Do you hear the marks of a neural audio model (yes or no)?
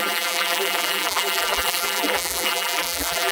yes